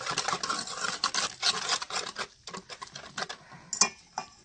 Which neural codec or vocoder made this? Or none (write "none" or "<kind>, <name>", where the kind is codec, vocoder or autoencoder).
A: none